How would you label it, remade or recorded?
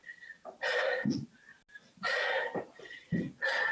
recorded